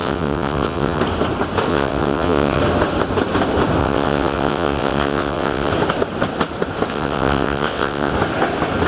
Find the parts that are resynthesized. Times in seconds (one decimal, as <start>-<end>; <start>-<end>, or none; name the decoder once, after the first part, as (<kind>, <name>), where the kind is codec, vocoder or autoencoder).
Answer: 0.0-1.0 (vocoder, WaveNeXt); 1.7-2.6; 3.8-5.7; 6.9-8.1